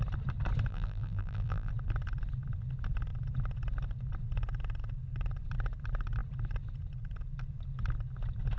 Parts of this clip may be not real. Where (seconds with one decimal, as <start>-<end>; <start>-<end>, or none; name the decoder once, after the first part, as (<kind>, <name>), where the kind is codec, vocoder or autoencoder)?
0.7-1.7 (vocoder, BigVGAN v2)